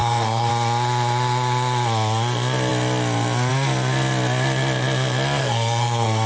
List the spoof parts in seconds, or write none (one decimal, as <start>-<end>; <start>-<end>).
0.0-0.5; 5.4-6.3